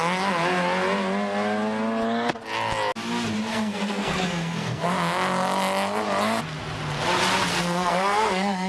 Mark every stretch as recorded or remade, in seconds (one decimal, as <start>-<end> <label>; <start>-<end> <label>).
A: 0.0-3.5 recorded; 3.5-4.9 remade; 4.9-7.5 recorded; 7.5-8.7 remade